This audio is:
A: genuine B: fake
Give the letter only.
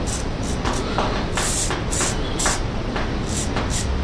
A